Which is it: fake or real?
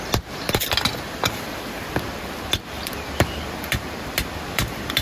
real